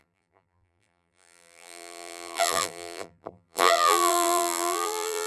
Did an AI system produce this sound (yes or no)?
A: yes